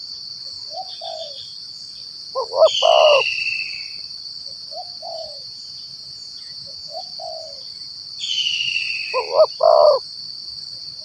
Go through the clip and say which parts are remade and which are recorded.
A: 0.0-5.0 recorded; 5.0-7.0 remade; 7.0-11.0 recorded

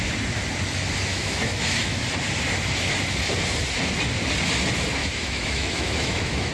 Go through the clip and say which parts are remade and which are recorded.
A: 0.0-1.1 recorded; 1.1-2.0 remade; 2.0-5.0 recorded; 5.0-6.5 remade

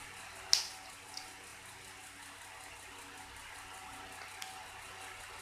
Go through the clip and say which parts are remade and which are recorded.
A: 0.0-5.4 recorded

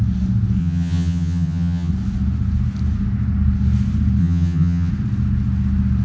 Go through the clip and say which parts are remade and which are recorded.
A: 0.0-0.6 recorded; 0.6-1.9 remade; 1.9-4.2 recorded; 4.2-4.9 remade; 4.9-6.0 recorded

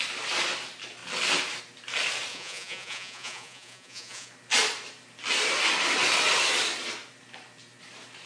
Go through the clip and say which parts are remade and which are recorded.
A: 0.0-2.3 recorded; 2.3-4.3 remade; 4.3-8.3 recorded